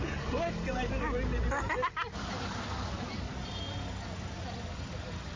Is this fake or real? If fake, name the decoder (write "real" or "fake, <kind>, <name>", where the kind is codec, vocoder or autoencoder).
real